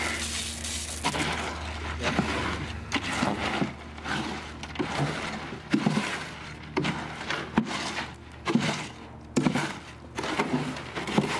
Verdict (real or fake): real